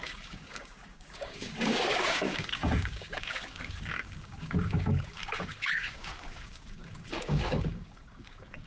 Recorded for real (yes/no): no